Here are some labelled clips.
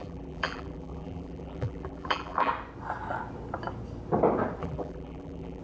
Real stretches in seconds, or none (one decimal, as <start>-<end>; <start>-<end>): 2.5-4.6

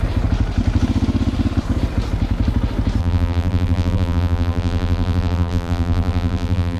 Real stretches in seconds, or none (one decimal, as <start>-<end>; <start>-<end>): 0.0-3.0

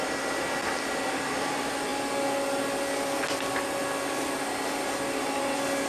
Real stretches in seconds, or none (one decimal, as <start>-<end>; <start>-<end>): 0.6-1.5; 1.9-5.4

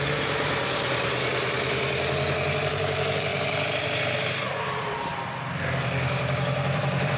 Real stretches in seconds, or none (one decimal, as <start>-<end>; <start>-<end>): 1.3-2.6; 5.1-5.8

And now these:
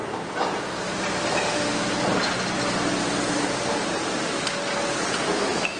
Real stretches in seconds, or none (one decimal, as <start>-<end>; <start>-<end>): 0.0-5.8

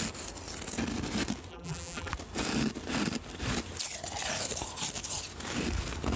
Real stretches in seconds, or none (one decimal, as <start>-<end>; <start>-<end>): 0.0-1.5; 2.1-6.2